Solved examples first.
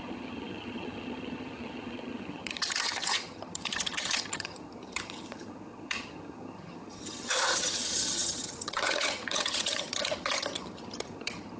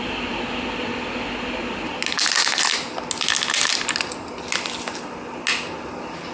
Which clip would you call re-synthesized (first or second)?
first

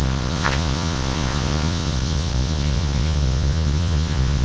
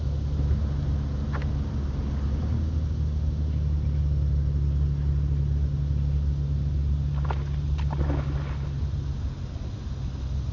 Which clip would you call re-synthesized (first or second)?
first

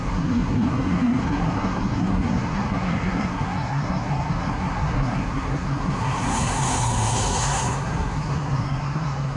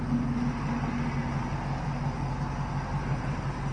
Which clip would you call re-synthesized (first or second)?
first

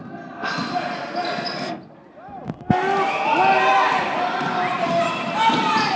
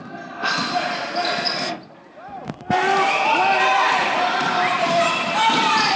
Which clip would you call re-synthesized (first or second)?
second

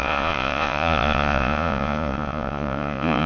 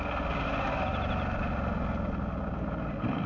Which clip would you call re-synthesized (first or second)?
first